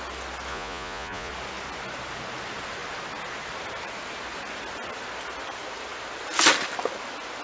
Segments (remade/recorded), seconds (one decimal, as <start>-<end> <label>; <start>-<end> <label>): 0.0-0.5 recorded; 0.5-1.3 remade; 1.3-7.4 recorded